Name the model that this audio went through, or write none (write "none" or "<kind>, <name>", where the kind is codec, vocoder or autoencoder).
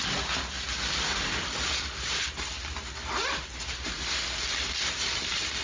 none